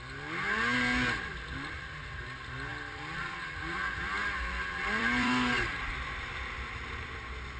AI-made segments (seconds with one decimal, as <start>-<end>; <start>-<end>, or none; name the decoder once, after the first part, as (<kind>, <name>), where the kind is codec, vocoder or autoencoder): 2.7-5.9 (vocoder, BigVGAN v2)